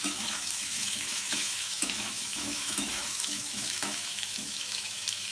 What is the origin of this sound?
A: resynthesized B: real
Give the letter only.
A